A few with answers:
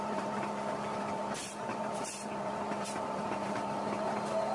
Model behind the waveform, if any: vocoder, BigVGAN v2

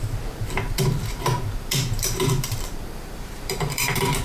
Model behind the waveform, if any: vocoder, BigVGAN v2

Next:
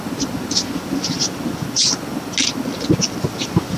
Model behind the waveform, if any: none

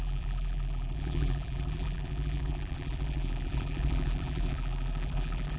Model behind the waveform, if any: vocoder, BigVGAN v2